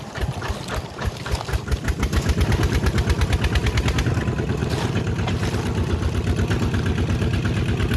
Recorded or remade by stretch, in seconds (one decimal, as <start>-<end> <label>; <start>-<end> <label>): 0.0-8.0 recorded